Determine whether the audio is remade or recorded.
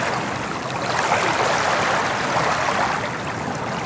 recorded